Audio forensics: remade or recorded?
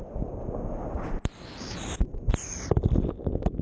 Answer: recorded